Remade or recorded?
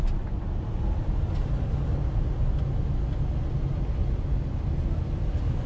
recorded